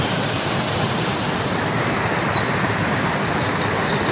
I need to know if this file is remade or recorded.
recorded